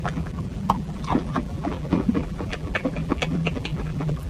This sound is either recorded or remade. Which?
remade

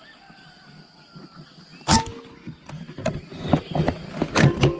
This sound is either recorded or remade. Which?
recorded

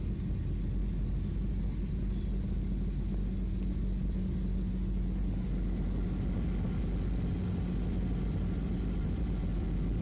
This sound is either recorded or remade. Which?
recorded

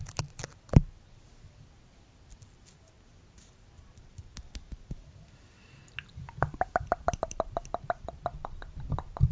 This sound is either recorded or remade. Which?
remade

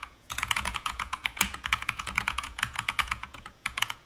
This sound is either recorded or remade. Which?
remade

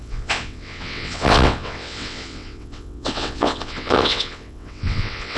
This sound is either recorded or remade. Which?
remade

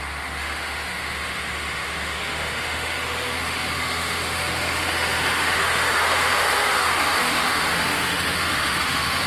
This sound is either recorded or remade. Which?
remade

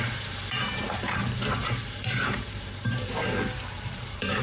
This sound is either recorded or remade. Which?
remade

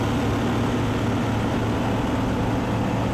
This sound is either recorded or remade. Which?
recorded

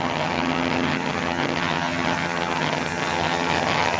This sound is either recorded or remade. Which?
remade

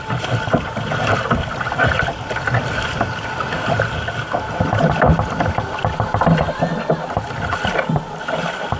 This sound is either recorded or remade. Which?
recorded